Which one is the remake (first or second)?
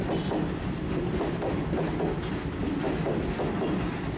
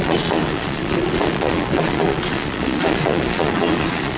second